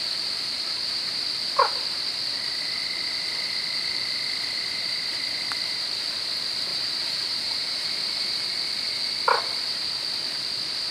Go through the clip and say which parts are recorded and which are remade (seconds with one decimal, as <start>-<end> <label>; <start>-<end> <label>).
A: 0.0-6.7 recorded; 6.7-7.8 remade; 7.8-10.9 recorded